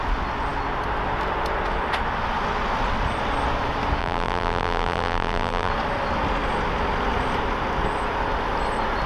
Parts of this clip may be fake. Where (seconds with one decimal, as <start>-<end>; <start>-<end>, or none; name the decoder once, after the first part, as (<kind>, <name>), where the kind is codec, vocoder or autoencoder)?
4.0-5.7 (vocoder, BigVGAN v2)